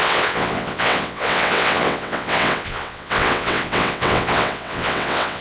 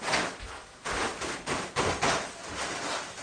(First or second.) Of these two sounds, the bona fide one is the second